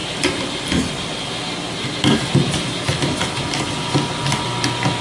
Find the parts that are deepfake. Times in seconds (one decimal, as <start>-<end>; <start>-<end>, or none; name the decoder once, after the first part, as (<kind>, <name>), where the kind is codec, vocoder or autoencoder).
none